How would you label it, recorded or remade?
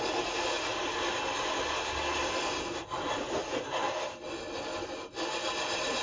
recorded